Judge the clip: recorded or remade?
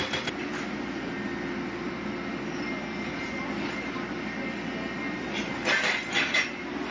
recorded